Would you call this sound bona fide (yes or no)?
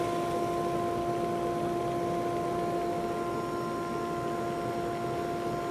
yes